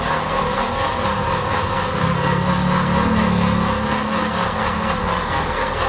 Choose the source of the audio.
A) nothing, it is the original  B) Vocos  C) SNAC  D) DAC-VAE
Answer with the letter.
C